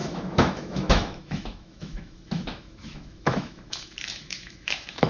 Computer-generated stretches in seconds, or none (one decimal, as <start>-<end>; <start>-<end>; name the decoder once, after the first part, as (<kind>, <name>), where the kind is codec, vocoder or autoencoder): 0.0-5.1 (autoencoder, DAC-VAE)